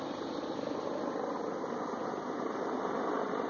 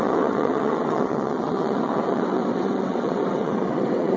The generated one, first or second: second